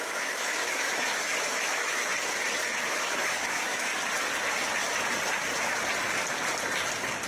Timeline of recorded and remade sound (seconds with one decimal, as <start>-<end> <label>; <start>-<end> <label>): 0.0-2.1 remade; 2.1-2.9 recorded; 2.9-3.9 remade; 3.9-7.3 recorded